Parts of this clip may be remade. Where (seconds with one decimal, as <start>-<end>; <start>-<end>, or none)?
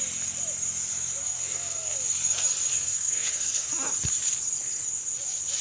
1.2-2.0; 2.7-3.7